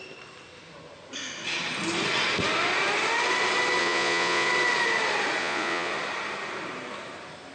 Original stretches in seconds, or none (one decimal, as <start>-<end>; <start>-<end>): 0.0-3.8; 4.5-5.4; 5.9-7.5